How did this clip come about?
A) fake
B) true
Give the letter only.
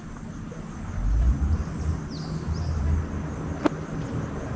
B